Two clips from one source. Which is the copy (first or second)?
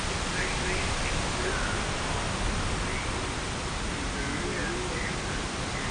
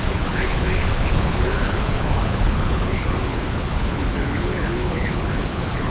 second